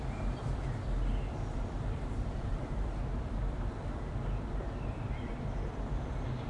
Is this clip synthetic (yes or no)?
yes